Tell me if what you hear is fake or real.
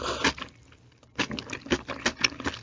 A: real